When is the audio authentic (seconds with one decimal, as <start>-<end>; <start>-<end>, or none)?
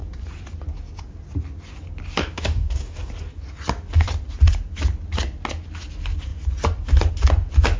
0.0-2.2; 3.1-7.8